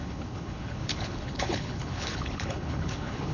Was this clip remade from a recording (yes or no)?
yes